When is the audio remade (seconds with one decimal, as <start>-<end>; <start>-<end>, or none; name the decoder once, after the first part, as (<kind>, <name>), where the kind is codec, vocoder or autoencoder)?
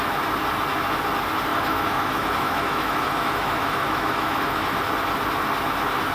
1.5-4.8 (autoencoder, DAC-VAE)